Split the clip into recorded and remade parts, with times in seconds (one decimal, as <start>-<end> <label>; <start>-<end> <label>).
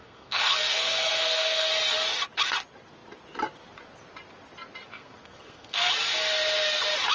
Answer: 0.0-1.7 remade; 1.7-4.9 recorded; 4.9-5.9 remade; 5.9-7.1 recorded